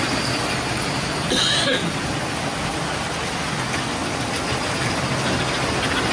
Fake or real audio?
real